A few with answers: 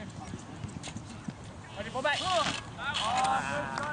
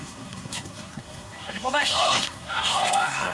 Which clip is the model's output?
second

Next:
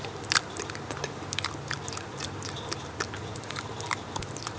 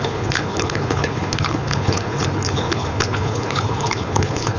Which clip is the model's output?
second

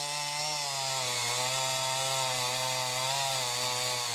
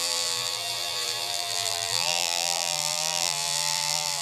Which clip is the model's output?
second